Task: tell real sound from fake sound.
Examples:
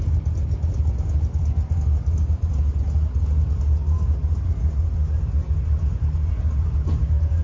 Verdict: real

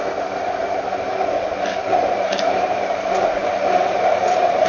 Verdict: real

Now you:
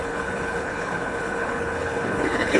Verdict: fake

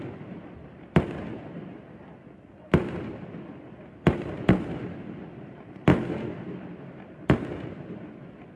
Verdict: real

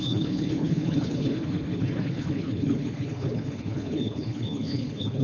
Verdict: fake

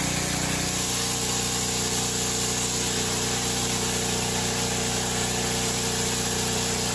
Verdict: real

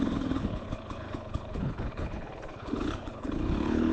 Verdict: fake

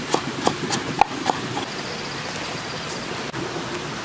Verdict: real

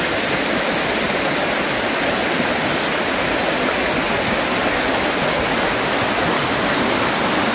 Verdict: real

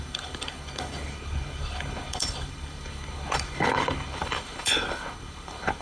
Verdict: fake